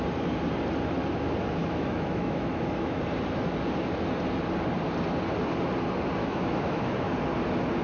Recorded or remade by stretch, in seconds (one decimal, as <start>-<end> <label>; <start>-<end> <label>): 0.0-1.6 recorded; 1.6-3.0 remade; 3.0-6.2 recorded; 6.2-7.1 remade; 7.1-7.8 recorded